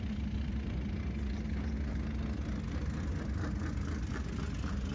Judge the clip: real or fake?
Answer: real